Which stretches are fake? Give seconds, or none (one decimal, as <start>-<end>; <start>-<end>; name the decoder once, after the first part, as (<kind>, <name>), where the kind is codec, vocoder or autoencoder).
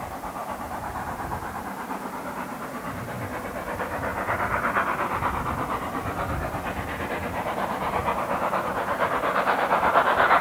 0.0-4.1 (vocoder, BigVGAN v2); 7.0-8.0; 8.7-10.4